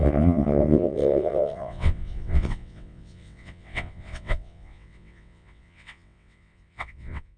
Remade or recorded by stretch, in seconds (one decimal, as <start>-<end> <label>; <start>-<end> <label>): 0.0-7.4 remade